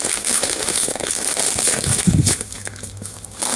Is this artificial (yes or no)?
yes